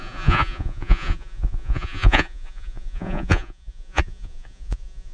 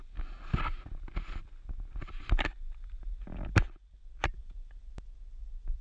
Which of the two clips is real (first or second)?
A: second